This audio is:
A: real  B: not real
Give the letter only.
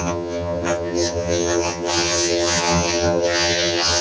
B